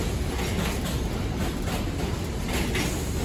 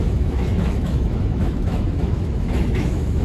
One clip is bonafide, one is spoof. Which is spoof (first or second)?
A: second